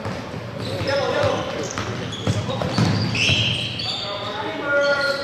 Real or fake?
real